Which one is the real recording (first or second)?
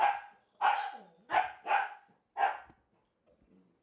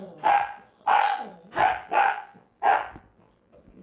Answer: first